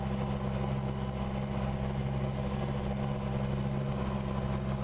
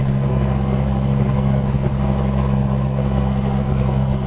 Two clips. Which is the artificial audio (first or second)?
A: second